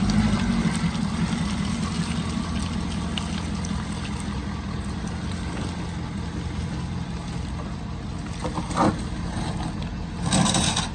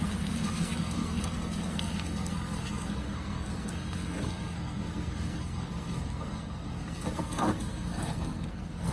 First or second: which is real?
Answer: first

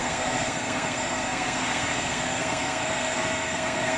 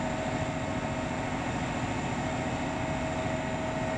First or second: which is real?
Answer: second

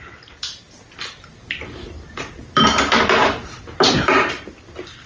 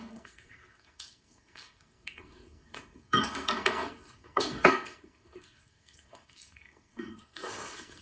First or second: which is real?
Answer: first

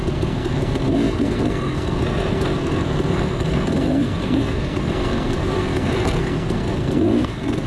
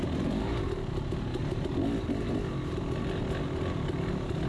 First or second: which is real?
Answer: second